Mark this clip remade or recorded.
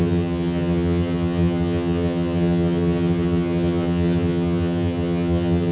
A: remade